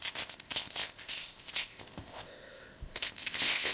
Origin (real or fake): fake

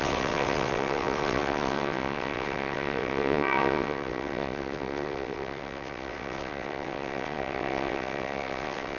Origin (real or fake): fake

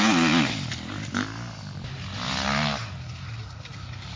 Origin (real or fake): real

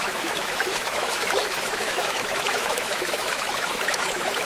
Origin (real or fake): fake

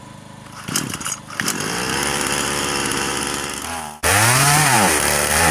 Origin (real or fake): fake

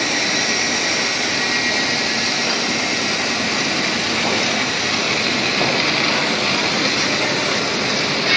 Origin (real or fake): real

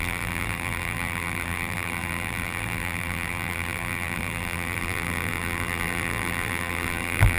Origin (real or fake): fake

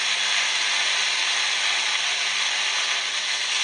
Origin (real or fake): real